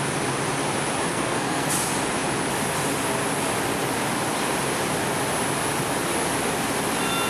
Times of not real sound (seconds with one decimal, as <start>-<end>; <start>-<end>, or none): 1.1-1.7